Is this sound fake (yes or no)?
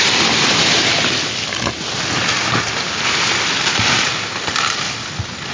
no